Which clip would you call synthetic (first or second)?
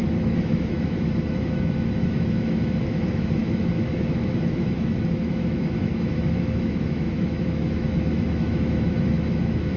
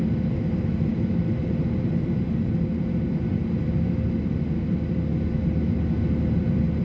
first